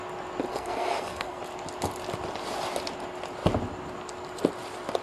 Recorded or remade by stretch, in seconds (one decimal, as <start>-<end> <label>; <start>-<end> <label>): 0.0-0.5 recorded; 0.5-1.4 remade; 1.4-5.0 recorded